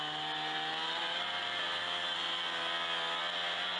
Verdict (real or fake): real